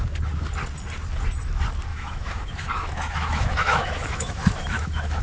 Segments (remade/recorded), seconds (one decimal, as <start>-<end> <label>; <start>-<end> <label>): 0.0-1.9 recorded; 1.9-5.2 remade